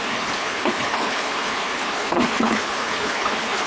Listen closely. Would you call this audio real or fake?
fake